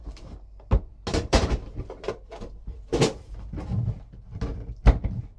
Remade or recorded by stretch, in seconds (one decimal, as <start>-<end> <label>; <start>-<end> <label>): 0.0-1.1 recorded; 1.1-2.1 remade; 2.1-5.4 recorded

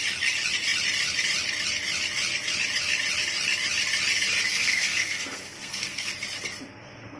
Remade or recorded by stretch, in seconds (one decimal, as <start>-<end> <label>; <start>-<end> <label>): 0.0-4.5 recorded; 4.5-6.1 remade; 6.1-7.2 recorded

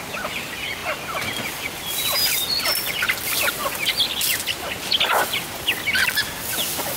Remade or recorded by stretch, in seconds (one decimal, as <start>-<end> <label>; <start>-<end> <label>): 0.0-7.0 recorded

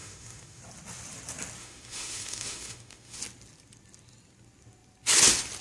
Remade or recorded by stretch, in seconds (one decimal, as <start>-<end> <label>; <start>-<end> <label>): 0.0-0.6 remade; 0.6-1.6 recorded; 1.6-3.2 remade; 3.2-5.6 recorded

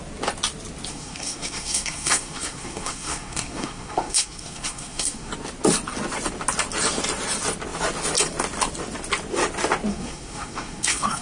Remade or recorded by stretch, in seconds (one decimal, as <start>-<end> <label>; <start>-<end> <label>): 0.0-0.9 recorded; 0.9-5.3 remade; 5.3-9.9 recorded; 9.9-11.2 remade

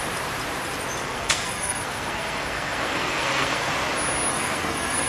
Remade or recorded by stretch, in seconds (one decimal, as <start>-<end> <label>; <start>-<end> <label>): 0.0-1.0 recorded; 1.0-3.7 remade; 3.7-4.3 recorded; 4.3-5.1 remade